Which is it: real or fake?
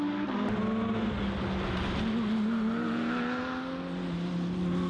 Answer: real